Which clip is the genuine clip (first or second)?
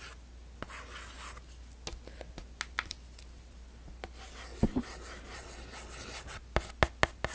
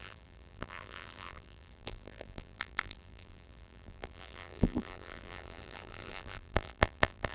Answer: first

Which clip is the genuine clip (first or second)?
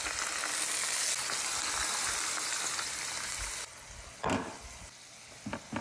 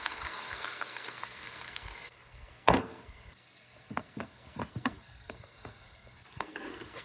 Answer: first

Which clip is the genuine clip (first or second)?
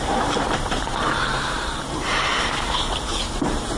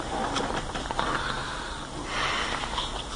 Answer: second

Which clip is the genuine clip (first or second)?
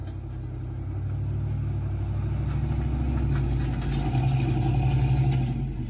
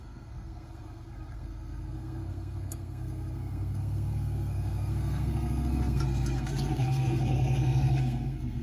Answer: first